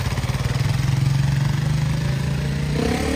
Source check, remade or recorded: recorded